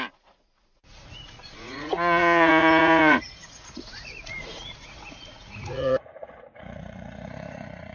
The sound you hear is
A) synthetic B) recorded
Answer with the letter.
A